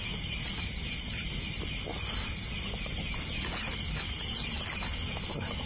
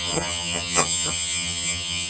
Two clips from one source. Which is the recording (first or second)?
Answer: first